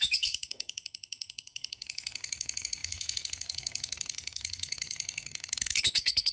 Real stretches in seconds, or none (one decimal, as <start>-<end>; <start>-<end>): none